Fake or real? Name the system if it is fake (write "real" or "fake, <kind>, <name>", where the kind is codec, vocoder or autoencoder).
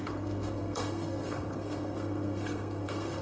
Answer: fake, codec, SNAC